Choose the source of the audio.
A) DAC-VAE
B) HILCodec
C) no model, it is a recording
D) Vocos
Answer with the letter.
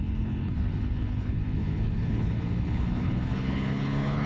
B